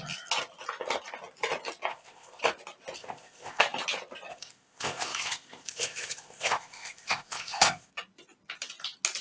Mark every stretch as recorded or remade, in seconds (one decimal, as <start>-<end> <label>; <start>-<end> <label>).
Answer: 0.0-1.9 recorded; 1.9-2.4 remade; 2.4-3.0 recorded; 3.0-3.6 remade; 3.6-4.3 recorded; 4.3-7.9 remade; 7.9-9.2 recorded